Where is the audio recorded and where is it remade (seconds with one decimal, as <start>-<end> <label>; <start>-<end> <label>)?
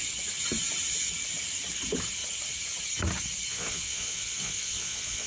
0.0-3.5 recorded; 3.5-5.3 remade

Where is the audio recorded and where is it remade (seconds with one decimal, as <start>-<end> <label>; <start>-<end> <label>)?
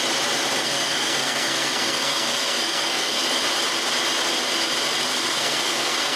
0.0-0.6 recorded; 0.6-3.2 remade; 3.2-5.1 recorded; 5.1-6.2 remade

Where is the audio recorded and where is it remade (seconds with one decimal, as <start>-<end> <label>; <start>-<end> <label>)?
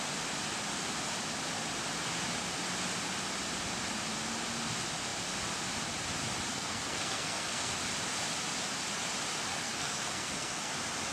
0.0-6.5 recorded; 6.5-7.7 remade; 7.7-9.5 recorded; 9.5-10.7 remade; 10.7-11.1 recorded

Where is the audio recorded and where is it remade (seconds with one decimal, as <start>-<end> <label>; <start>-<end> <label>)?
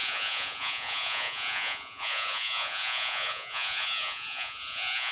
0.0-5.1 remade